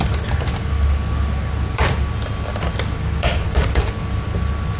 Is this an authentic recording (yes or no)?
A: yes